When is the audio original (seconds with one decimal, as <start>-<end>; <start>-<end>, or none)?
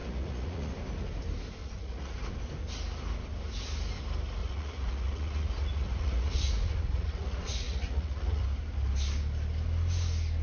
0.7-1.6; 2.2-4.4; 8.4-10.4